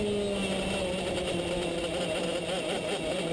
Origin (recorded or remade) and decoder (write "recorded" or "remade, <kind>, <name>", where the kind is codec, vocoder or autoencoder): recorded